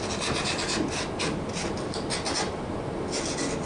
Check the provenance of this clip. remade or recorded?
recorded